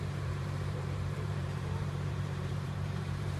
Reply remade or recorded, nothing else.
remade